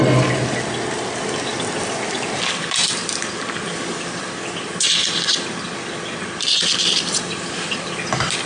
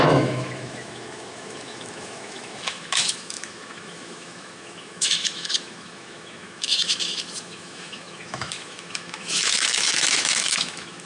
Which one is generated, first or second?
second